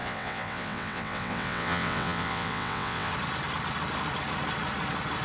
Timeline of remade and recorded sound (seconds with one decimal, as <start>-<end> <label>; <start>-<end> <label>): 0.0-3.1 remade; 3.1-5.2 recorded